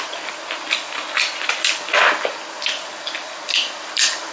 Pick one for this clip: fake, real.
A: real